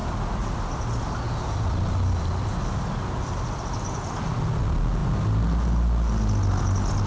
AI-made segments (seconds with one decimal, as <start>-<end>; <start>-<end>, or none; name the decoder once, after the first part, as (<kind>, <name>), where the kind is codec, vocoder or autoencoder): none